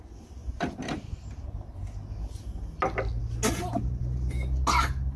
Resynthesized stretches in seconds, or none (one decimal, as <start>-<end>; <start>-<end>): none